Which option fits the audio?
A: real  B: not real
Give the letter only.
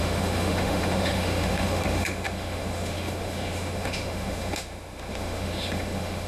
B